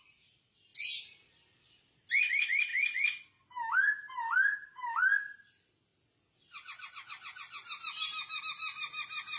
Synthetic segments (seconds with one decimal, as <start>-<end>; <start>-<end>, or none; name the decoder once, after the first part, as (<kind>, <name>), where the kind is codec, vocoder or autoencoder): 0.0-0.7 (vocoder, BigVGAN v2); 2.2-2.7; 4.9-5.9; 8.4-9.4